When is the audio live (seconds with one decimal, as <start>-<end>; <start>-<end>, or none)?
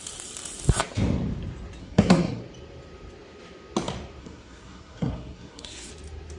0.0-1.8; 2.4-4.2; 5.9-6.4